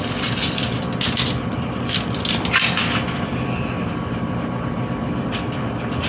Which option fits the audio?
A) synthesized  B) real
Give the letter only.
B